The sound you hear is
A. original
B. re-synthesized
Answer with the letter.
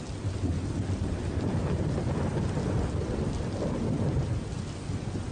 A